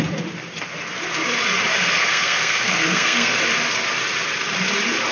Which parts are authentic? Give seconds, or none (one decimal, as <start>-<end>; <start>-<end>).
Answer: 0.0-1.8; 3.4-5.1